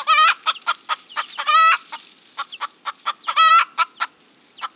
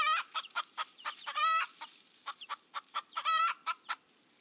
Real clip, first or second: first